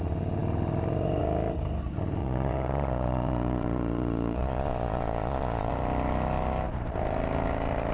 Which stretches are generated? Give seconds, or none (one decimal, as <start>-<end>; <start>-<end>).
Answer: 2.2-5.7